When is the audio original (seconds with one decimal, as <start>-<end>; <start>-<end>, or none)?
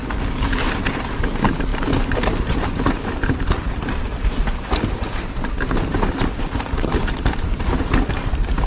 0.0-8.7